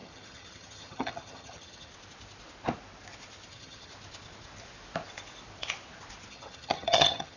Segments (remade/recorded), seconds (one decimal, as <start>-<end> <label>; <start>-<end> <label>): 0.0-1.9 remade; 1.9-3.5 recorded; 3.5-3.9 remade; 3.9-6.3 recorded; 6.3-7.4 remade